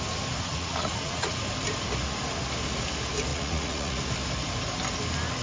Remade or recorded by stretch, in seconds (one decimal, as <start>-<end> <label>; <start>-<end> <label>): 0.0-0.5 recorded; 0.5-1.4 remade; 1.4-3.3 recorded; 3.3-4.0 remade; 4.0-5.4 recorded